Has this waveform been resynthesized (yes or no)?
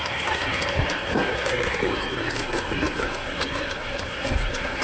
yes